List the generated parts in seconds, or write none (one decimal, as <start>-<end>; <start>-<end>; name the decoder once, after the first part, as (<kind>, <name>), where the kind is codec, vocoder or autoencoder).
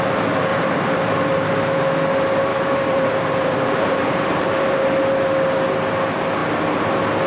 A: 0.5-1.5 (vocoder, BigVGAN v2); 2.5-4.8